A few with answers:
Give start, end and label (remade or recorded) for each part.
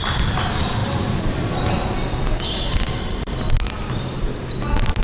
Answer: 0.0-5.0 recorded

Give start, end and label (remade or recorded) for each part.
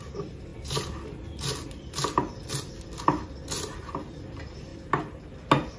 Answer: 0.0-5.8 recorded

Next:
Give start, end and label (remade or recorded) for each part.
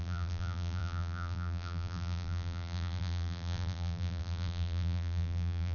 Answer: 0.0-5.7 remade